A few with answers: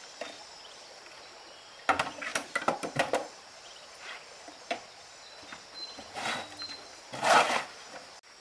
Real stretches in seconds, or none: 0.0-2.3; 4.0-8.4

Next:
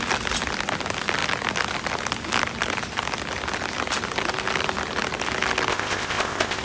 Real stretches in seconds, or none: 0.0-5.7

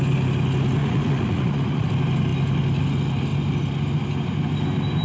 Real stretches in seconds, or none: 0.0-0.8; 1.9-5.0

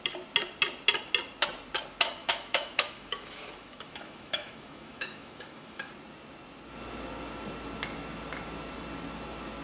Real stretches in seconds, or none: 0.0-2.2; 5.9-9.6

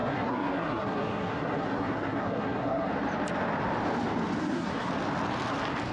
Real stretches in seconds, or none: 2.9-4.4; 4.9-5.9

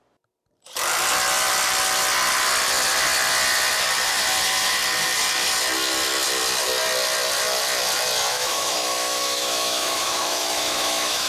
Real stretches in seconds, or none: 0.0-8.3

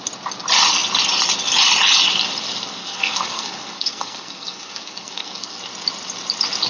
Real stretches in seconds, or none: 0.0-2.8; 5.6-6.7

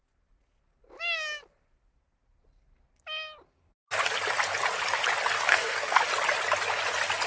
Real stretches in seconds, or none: 0.0-5.5; 6.0-7.3